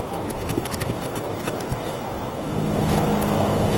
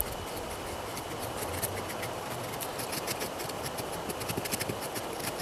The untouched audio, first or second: second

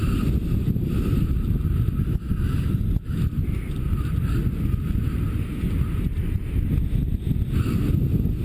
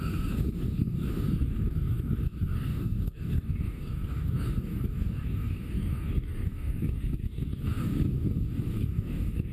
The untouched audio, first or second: first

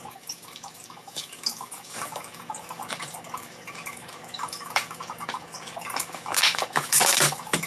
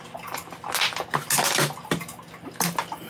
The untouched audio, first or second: second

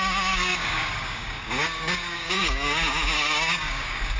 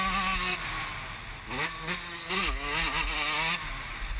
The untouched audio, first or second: second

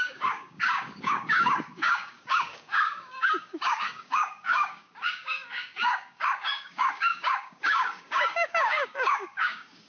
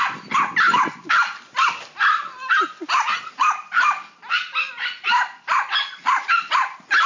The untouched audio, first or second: second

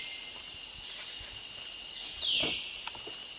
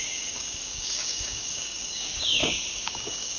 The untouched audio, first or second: first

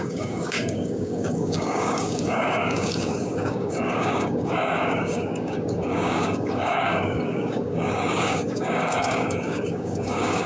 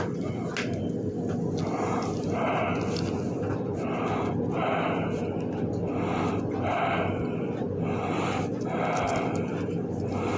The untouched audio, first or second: second